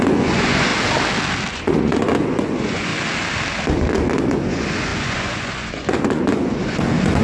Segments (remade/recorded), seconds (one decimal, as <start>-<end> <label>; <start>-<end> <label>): 0.0-0.7 remade; 0.7-1.5 recorded; 1.5-2.9 remade; 2.9-4.2 recorded; 4.2-7.2 remade